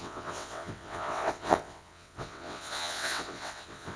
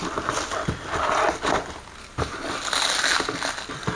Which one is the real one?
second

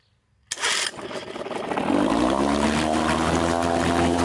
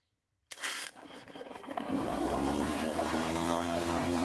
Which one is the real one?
first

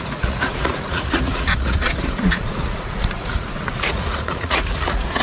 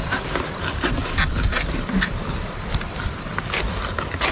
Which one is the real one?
second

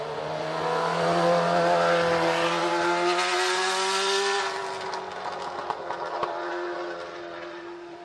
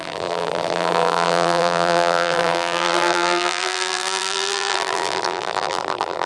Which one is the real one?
first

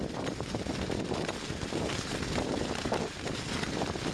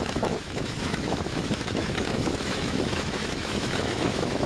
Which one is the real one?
first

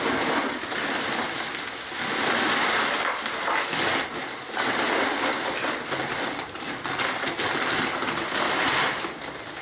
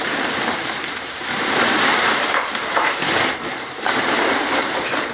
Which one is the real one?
first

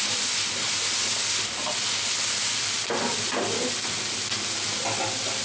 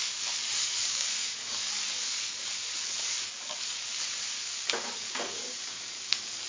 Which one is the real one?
first